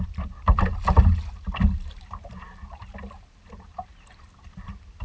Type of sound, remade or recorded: recorded